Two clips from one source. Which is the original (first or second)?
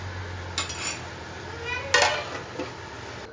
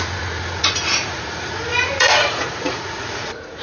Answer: first